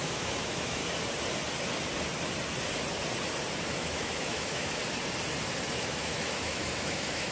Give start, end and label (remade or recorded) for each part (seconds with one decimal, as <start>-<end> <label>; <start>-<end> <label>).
0.0-0.8 remade; 0.8-3.7 recorded; 3.7-4.8 remade; 4.8-5.8 recorded; 5.8-7.3 remade